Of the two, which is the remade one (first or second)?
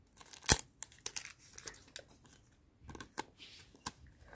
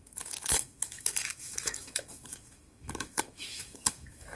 second